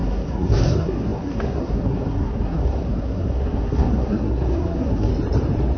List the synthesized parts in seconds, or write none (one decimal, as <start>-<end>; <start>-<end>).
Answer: 0.0-5.1